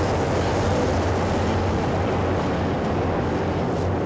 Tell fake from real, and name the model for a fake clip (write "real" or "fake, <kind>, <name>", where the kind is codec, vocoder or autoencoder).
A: real